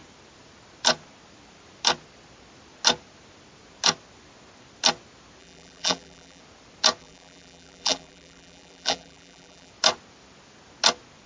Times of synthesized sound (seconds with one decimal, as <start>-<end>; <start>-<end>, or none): 5.4-6.4; 7.0-9.7